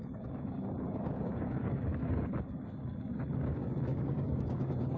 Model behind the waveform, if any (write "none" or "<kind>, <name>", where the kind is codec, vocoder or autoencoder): codec, DAC